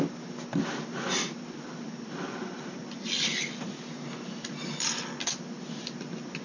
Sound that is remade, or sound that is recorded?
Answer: recorded